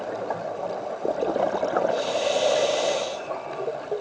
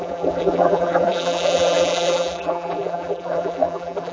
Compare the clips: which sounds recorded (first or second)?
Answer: first